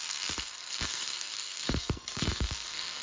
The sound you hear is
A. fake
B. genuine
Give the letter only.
A